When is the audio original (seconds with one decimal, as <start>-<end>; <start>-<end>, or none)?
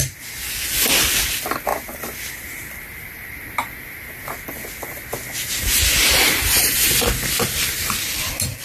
0.0-8.6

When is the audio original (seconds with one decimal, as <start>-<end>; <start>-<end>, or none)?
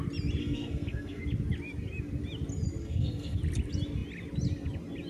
0.0-0.4; 1.2-2.8; 3.4-5.1